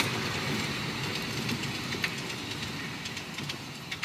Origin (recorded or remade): recorded